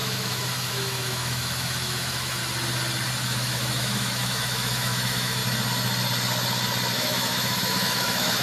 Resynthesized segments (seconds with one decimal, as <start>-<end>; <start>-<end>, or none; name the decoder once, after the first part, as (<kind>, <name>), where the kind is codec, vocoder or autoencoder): 0.0-2.4 (autoencoder, DAC-VAE); 3.2-5.4; 6.9-8.4